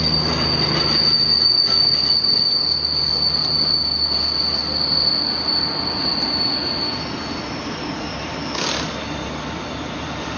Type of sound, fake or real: real